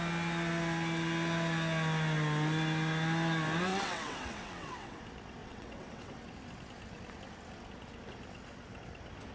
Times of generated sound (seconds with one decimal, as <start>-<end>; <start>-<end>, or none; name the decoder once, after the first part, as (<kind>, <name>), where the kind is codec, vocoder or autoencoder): 3.7-5.0 (vocoder, WaveNeXt); 5.4-6.1